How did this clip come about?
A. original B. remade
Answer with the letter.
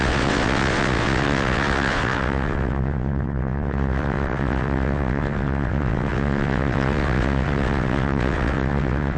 B